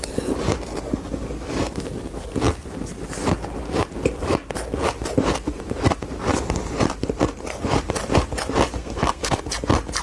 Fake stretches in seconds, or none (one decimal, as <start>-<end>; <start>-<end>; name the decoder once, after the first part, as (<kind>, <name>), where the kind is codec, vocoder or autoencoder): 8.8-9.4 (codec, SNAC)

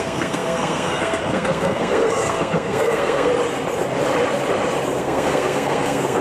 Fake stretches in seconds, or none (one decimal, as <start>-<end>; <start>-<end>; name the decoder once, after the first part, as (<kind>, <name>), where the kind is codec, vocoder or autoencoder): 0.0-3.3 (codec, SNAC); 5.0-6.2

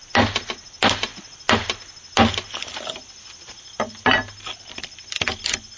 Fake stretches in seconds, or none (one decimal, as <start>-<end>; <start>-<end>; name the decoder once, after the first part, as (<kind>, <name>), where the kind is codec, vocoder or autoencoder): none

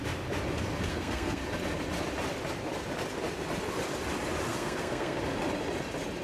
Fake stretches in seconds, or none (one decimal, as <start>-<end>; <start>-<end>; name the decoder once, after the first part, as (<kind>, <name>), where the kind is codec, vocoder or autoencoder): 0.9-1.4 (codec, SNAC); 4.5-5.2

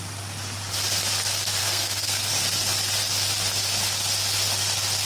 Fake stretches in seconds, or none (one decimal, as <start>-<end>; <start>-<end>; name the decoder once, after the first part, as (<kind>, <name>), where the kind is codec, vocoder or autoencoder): 1.6-2.3 (codec, SNAC)

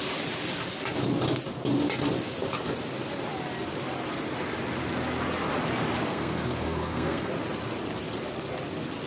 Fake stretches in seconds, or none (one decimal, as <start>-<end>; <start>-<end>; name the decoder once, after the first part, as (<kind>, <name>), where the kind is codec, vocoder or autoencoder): 6.0-7.3 (codec, SNAC)